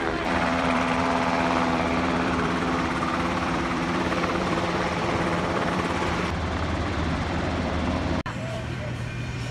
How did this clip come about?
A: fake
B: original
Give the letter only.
A